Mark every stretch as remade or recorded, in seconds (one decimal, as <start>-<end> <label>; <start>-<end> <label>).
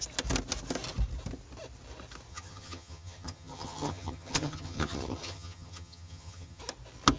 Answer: 0.0-2.3 recorded; 2.3-6.6 remade; 6.6-7.2 recorded